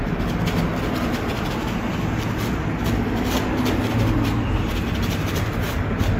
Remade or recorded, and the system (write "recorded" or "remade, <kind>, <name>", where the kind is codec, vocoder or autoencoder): recorded